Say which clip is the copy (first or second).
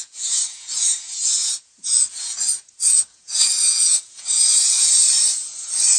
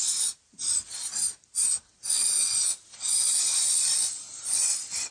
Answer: first